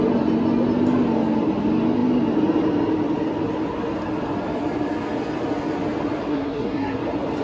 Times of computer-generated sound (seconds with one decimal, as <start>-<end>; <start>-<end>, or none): 6.3-7.0